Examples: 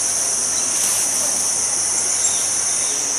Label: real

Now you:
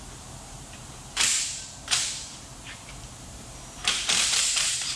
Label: fake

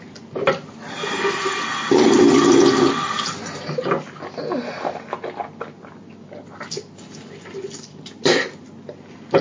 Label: real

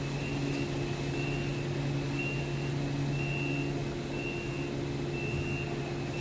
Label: real